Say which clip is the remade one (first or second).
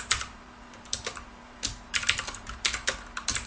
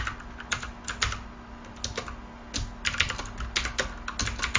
first